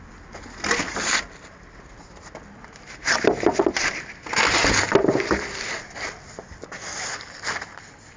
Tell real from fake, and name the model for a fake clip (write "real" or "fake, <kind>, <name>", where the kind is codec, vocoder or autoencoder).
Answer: real